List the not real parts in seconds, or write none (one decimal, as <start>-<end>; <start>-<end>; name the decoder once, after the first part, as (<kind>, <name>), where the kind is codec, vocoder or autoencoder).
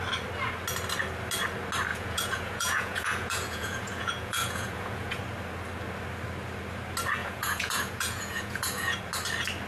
1.9-5.2 (vocoder, Vocos); 7.2-9.0